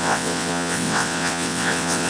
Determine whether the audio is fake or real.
fake